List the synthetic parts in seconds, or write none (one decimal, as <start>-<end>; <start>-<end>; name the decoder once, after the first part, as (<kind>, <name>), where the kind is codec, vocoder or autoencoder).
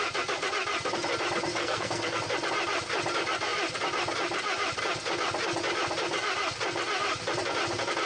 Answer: 1.6-2.2 (codec, SNAC)